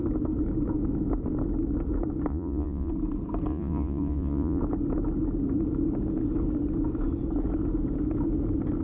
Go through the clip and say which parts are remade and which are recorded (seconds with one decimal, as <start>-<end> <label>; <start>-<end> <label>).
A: 0.0-2.3 recorded; 2.3-2.9 remade; 2.9-3.5 recorded; 3.5-4.6 remade; 4.6-8.8 recorded